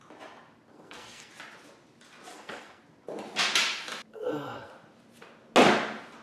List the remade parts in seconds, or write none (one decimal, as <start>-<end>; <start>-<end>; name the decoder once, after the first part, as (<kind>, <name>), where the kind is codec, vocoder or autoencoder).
0.7-1.3 (codec, SNAC); 2.3-2.8; 4.1-4.7